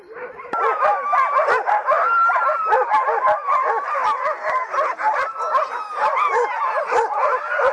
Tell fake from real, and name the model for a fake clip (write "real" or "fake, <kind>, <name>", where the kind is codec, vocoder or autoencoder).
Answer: real